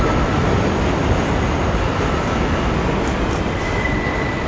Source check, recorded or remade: recorded